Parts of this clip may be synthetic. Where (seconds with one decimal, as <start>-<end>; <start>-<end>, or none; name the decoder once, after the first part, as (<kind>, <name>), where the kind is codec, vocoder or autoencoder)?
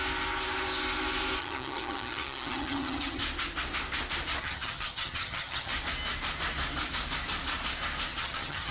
1.4-3.2 (vocoder, HiFi-GAN); 4.4-5.7; 8.2-8.7